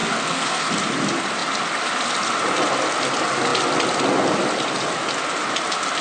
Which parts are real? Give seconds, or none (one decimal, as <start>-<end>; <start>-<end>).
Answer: 0.7-6.0